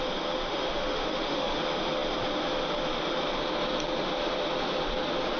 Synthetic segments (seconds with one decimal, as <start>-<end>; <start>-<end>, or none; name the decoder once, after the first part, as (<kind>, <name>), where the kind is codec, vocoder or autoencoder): 0.5-1.6 (autoencoder, DAC-VAE)